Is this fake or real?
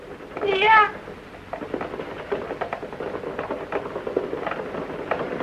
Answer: real